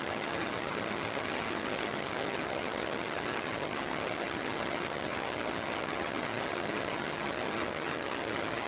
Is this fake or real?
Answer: fake